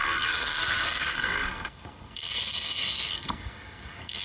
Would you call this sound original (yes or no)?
no